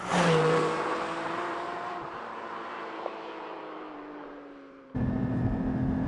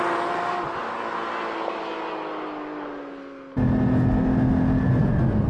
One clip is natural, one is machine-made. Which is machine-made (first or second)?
first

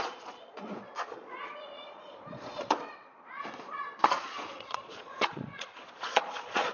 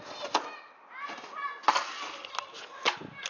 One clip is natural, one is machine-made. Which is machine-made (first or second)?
first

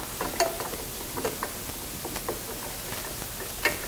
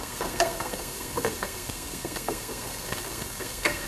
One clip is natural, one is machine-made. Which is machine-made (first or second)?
second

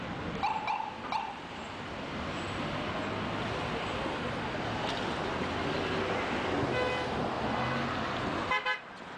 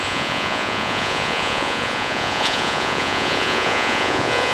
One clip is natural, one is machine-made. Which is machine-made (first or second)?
second